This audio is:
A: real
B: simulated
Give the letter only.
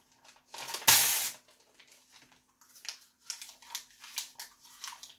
A